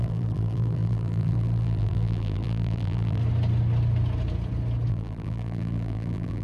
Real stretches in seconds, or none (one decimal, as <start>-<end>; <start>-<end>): 3.2-4.9